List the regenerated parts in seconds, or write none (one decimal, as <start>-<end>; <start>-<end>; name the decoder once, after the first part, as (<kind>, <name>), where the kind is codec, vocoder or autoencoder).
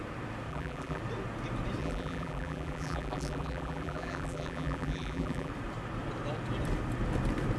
0.5-1.0 (vocoder, BigVGAN v2); 1.8-5.5